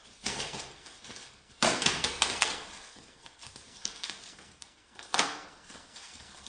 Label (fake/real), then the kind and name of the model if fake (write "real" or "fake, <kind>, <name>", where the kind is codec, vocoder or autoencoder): fake, codec, SNAC